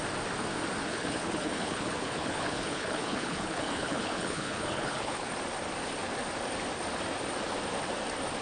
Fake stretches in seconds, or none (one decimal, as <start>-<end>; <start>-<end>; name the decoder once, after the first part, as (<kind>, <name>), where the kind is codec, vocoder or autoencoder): 0.9-5.3 (codec, HILCodec)